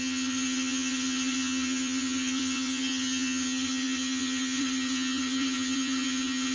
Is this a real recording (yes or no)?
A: no